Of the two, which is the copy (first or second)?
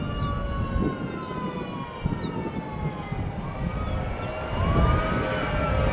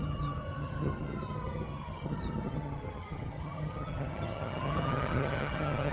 second